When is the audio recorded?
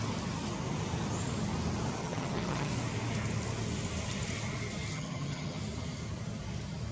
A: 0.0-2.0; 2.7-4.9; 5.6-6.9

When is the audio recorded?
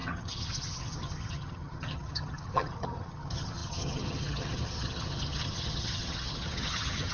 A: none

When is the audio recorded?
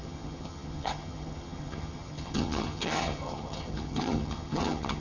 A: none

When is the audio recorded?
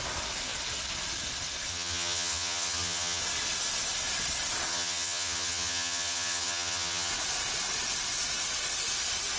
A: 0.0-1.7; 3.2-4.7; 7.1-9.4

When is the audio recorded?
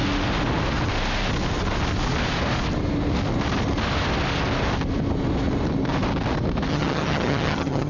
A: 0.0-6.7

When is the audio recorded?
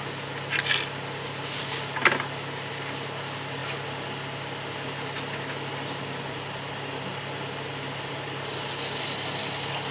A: 0.0-9.9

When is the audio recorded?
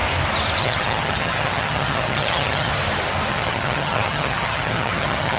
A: 0.0-0.6; 2.7-3.3